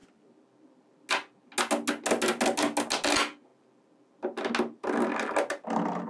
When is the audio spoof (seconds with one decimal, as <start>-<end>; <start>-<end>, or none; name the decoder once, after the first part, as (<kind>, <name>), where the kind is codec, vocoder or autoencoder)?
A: none